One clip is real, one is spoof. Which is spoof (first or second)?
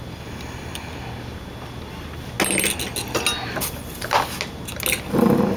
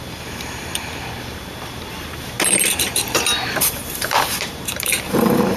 second